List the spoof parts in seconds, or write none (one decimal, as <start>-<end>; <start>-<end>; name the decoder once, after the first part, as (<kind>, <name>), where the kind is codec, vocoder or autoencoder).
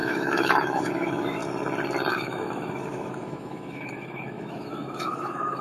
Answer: 0.0-1.4 (autoencoder, DAC-VAE); 2.1-5.6